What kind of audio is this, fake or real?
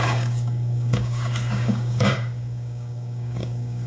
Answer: fake